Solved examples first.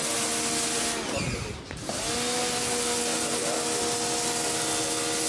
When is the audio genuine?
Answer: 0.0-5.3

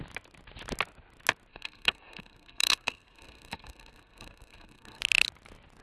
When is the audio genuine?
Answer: 0.0-1.5; 5.0-5.8

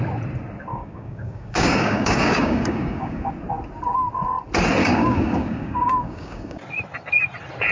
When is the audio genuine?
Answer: 0.0-0.7; 3.3-4.8; 6.6-7.7

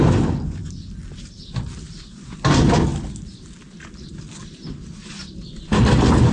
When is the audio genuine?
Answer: 0.0-6.3